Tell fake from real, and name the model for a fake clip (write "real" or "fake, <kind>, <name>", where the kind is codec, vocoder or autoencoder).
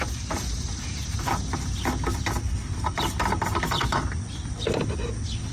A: real